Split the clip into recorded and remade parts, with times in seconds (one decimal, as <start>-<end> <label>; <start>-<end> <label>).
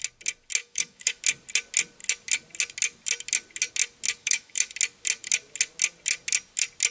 0.0-0.6 recorded; 0.6-1.2 remade; 1.2-4.2 recorded; 4.2-4.7 remade; 4.7-6.9 recorded